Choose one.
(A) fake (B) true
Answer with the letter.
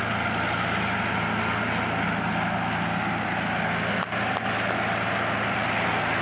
B